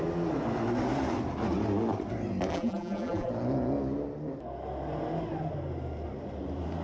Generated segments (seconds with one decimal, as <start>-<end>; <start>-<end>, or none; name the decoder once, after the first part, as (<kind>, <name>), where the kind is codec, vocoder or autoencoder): 2.5-3.3 (vocoder, BigVGAN v2)